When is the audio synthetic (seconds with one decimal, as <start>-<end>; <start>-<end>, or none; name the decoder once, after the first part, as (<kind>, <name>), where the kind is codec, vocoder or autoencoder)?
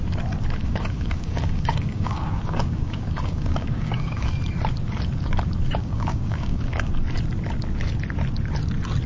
0.6-4.3 (codec, DAC); 5.8-6.9